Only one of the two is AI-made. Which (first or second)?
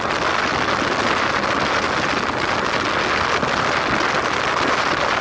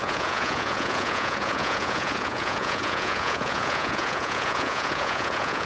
second